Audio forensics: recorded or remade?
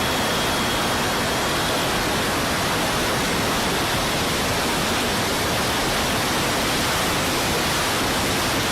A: recorded